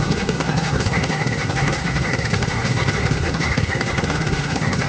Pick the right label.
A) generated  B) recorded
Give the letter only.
A